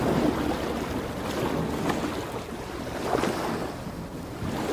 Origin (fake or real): real